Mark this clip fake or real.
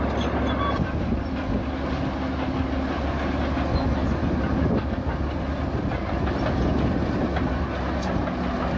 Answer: real